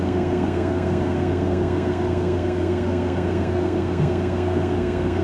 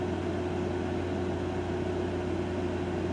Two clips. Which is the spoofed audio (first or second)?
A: first